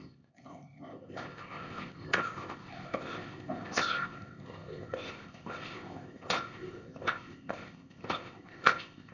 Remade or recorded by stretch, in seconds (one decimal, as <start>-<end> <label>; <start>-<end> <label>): 0.0-9.1 remade